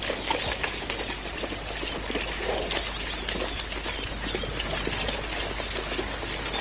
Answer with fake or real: real